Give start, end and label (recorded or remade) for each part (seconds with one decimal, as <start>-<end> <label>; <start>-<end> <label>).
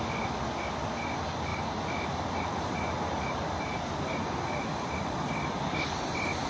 0.0-1.5 recorded; 1.5-4.9 remade; 4.9-6.5 recorded